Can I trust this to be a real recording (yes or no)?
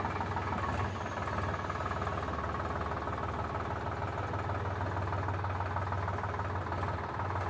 yes